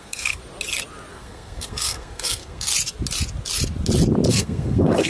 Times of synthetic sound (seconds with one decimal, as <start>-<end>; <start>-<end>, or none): 0.0-0.4; 1.1-2.7; 4.3-5.1